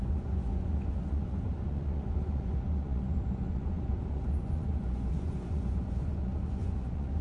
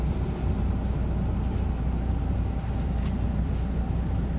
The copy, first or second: first